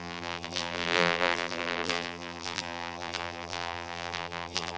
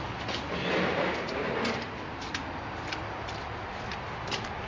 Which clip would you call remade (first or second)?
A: first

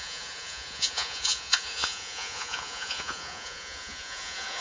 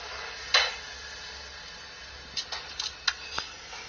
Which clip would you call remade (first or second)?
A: first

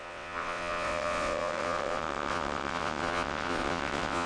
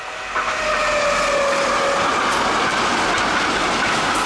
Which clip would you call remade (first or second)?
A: first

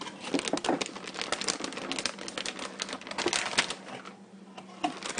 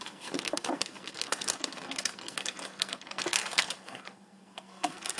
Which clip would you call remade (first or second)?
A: second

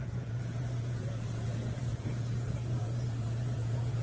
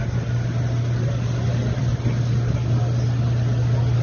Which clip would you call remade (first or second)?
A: first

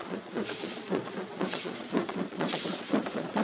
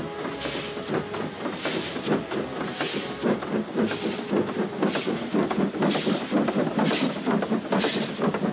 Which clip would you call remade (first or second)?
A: first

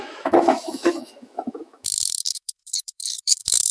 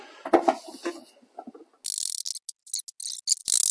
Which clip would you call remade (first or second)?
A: first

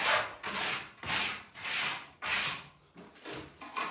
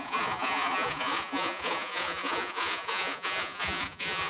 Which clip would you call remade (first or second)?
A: second